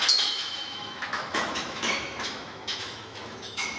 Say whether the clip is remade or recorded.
remade